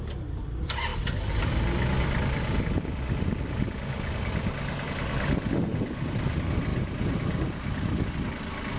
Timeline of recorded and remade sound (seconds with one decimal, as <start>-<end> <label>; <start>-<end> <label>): 0.0-6.7 recorded; 6.7-8.1 remade; 8.1-8.8 recorded